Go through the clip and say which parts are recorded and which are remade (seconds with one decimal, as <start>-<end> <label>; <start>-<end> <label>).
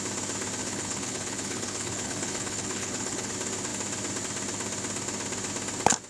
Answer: 0.0-0.6 recorded; 0.6-3.3 remade; 3.3-6.1 recorded